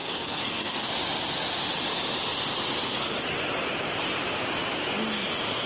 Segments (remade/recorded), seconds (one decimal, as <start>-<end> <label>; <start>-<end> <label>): 0.0-0.9 remade; 0.9-5.7 recorded